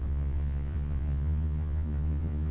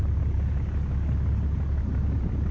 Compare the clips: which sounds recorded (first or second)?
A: second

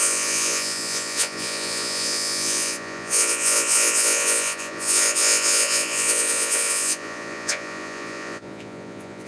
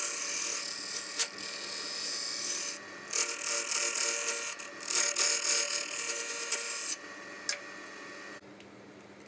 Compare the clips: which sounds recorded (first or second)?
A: second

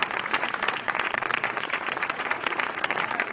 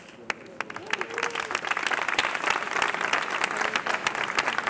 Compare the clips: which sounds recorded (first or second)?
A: second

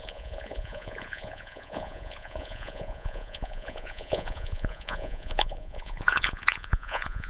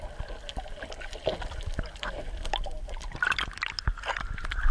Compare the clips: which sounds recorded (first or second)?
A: second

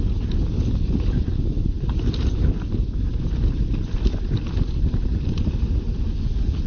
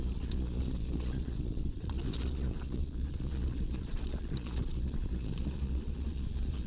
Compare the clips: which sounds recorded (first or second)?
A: first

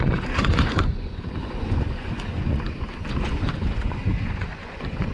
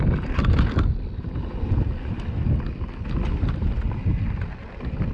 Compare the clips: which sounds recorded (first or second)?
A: second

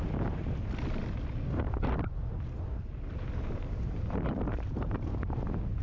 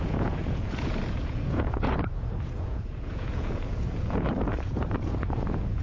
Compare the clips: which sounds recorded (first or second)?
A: first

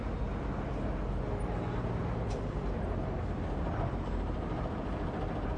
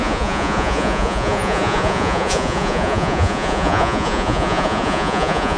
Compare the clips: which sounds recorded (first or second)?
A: first